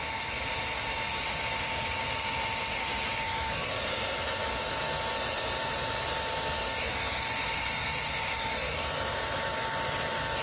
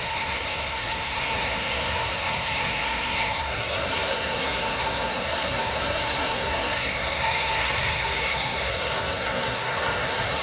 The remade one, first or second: second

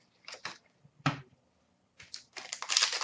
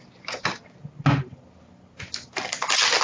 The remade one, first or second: first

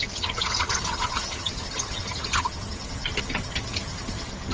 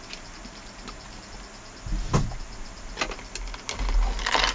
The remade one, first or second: first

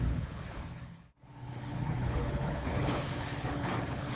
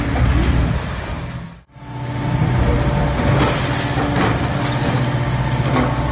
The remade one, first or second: first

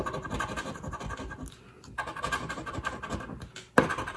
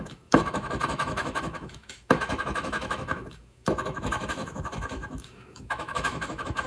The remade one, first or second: second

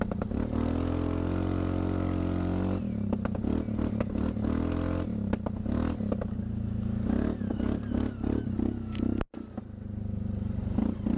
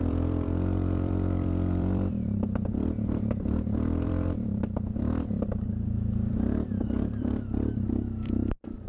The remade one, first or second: second